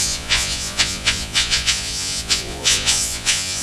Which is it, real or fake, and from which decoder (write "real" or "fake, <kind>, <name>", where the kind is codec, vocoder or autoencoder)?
fake, vocoder, Vocos